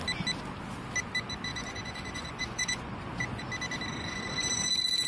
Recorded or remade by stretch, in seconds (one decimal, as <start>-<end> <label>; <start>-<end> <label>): 0.0-1.5 recorded; 1.5-3.4 remade; 3.4-3.9 recorded; 3.9-5.1 remade

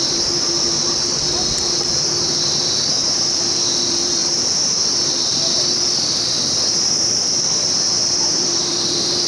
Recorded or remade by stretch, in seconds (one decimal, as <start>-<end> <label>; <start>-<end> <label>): 0.0-9.3 remade

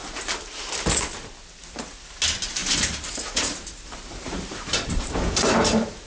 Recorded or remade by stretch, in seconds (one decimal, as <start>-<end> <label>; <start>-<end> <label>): 0.0-0.6 remade; 0.6-2.6 recorded; 2.6-6.1 remade

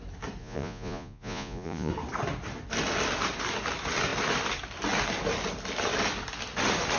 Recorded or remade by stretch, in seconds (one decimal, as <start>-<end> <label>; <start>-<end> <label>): 0.0-0.4 recorded; 0.4-1.9 remade; 1.9-7.0 recorded

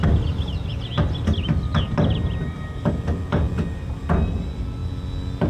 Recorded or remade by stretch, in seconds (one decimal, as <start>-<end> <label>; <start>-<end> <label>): 0.0-5.5 recorded